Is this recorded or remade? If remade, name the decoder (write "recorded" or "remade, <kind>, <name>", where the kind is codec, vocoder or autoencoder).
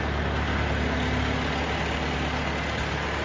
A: recorded